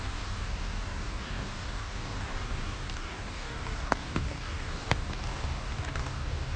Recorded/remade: remade